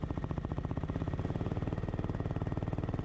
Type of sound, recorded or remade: recorded